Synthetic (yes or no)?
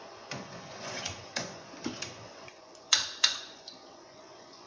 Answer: yes